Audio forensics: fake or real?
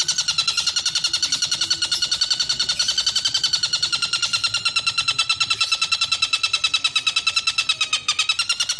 real